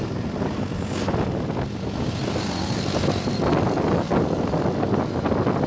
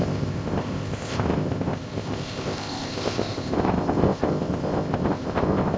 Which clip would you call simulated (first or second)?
second